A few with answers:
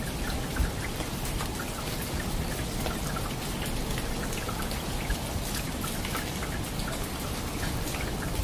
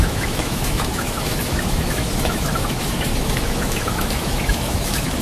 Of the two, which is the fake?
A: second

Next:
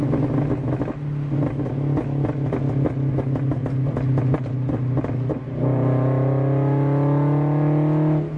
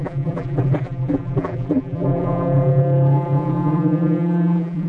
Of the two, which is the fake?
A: second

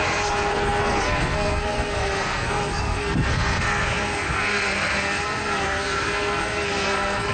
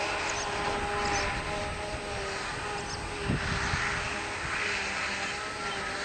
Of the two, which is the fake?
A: first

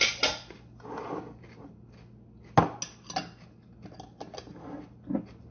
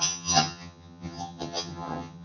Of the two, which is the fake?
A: second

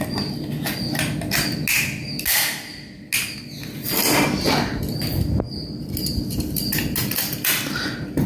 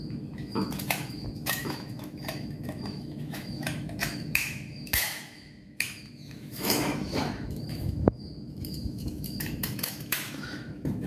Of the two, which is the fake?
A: second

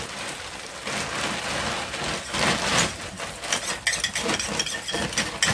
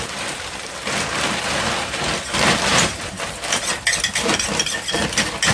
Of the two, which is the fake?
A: second